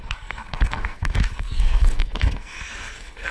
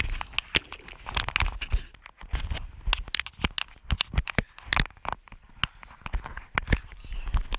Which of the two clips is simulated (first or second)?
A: first